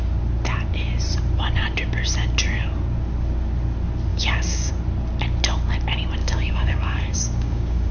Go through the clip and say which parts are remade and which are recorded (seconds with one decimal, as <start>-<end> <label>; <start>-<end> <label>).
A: 0.0-4.1 recorded; 4.1-4.7 remade; 4.7-6.2 recorded; 6.2-7.9 remade